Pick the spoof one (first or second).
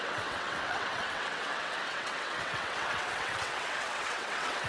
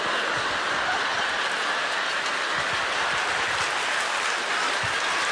first